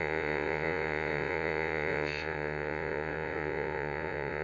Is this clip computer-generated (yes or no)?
yes